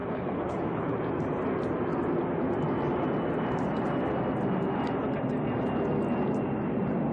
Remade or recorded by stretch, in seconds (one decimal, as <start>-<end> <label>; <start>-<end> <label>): 0.0-1.0 remade; 1.0-7.1 recorded